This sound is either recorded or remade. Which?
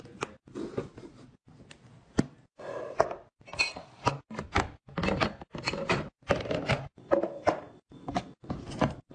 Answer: recorded